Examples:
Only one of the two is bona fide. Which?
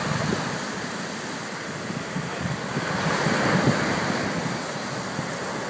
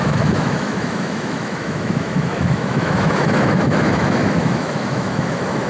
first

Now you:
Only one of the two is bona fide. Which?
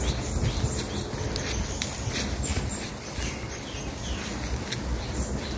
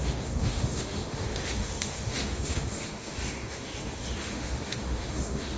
first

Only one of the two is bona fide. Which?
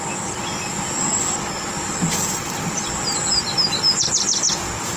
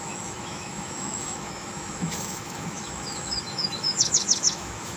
first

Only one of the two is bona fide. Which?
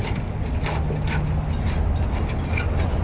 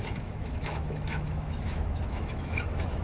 first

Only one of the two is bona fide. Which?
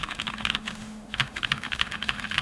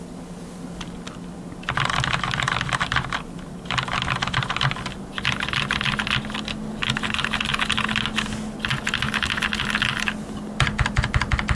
second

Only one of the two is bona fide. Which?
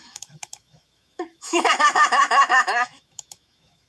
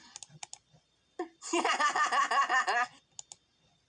second